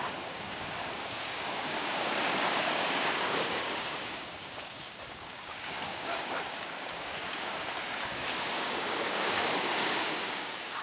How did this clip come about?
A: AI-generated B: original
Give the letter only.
A